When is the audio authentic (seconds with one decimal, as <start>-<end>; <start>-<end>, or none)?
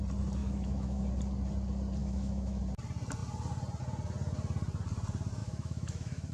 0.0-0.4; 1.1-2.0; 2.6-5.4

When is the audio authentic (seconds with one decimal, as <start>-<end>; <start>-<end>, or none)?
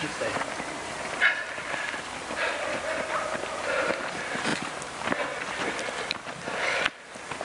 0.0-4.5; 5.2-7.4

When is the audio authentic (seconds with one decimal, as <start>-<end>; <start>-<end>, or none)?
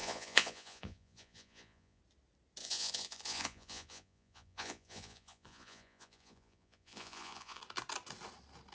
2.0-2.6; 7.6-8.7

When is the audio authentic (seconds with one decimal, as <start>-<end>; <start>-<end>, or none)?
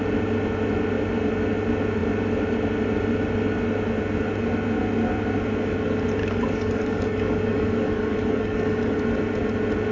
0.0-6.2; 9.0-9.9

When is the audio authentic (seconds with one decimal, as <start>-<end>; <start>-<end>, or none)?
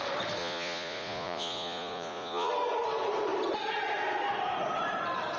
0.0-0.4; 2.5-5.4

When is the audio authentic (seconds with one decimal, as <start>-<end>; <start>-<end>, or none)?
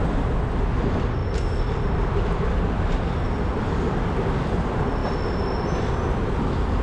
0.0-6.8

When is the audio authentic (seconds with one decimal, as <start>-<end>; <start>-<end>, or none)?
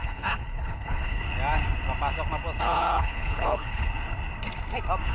1.2-2.6; 3.9-5.1